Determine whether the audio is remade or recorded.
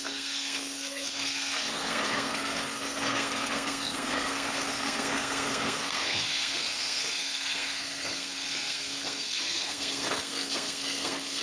remade